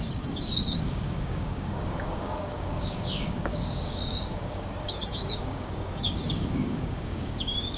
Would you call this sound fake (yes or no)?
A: yes